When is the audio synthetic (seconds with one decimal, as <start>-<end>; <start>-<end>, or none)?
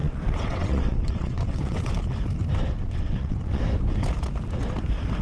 0.0-1.9; 2.8-3.6